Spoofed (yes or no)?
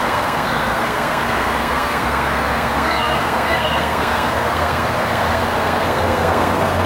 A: yes